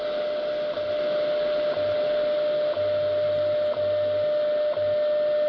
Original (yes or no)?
yes